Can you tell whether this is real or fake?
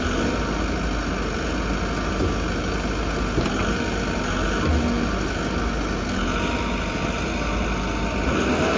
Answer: real